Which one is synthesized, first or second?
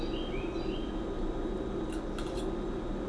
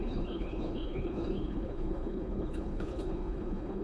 second